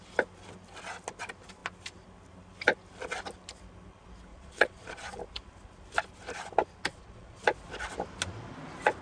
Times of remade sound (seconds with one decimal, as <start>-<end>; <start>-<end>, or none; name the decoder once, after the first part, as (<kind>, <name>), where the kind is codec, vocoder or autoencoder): 4.3-5.2 (vocoder, Vocos); 6.9-7.4